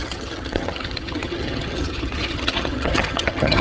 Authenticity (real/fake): fake